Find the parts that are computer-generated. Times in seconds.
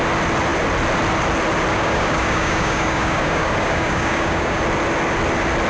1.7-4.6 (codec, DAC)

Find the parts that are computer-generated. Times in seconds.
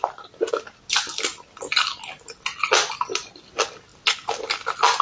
none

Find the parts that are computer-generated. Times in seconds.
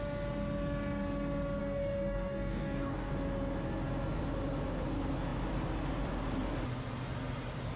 1.6-3.1 (codec, DAC)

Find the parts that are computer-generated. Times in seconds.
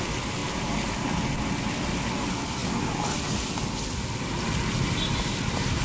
none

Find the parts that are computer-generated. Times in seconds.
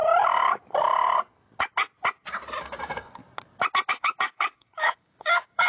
2.6-3.2 (codec, DAC); 3.9-5.7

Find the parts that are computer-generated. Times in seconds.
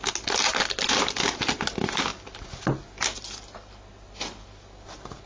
none